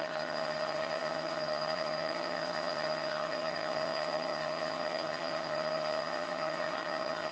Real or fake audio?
fake